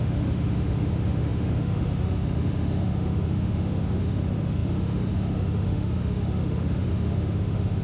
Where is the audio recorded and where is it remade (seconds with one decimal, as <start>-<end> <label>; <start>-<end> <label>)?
0.0-7.8 remade